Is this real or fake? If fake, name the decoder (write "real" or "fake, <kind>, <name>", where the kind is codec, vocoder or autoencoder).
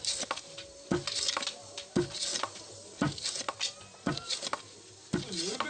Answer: real